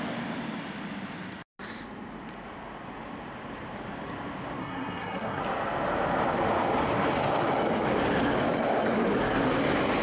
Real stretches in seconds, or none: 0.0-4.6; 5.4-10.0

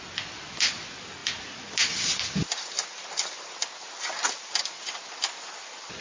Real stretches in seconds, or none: 0.0-6.0

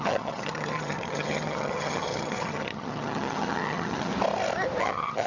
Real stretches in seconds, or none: 4.1-4.8

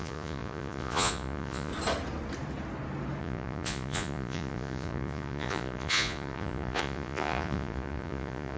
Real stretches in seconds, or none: 1.7-3.2

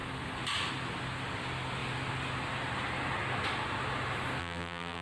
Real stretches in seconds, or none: 0.0-4.4

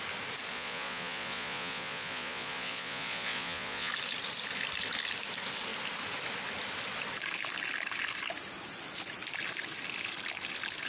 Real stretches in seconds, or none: 0.0-0.5; 3.9-10.9

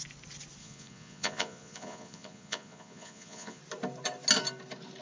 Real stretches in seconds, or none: 0.0-0.6; 3.6-5.0

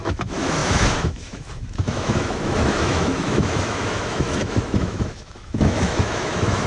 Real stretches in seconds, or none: none